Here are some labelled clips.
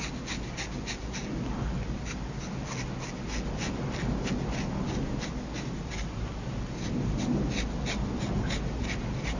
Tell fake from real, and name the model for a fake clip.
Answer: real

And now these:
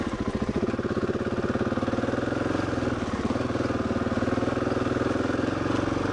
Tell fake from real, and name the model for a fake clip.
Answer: real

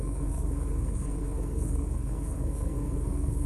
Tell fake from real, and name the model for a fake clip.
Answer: fake, codec, SNAC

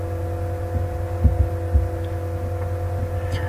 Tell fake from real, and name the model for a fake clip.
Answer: real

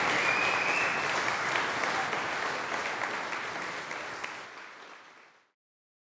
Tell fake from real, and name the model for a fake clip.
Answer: real